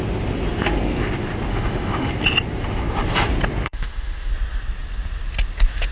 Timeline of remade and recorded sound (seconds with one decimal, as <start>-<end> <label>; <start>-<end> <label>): 0.0-1.5 recorded; 1.5-2.1 remade; 2.1-3.6 recorded; 3.6-4.3 remade; 4.3-5.9 recorded